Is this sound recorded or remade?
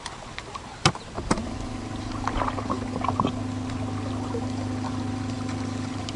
recorded